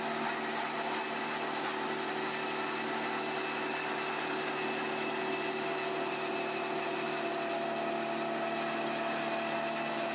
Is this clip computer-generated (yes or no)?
no